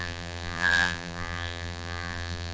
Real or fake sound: fake